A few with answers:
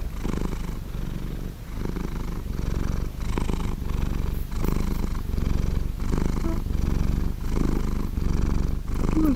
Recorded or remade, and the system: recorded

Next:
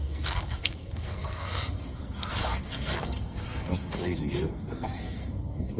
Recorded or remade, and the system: remade, codec, SNAC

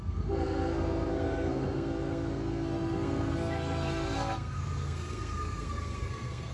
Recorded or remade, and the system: remade, codec, SNAC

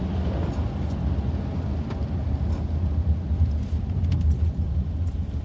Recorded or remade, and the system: recorded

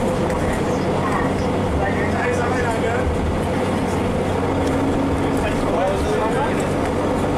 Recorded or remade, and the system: recorded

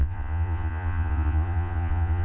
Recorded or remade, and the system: remade, vocoder, Vocos